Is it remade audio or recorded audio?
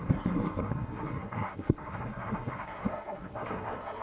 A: remade